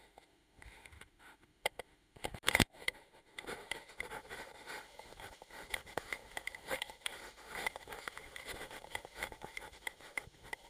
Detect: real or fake fake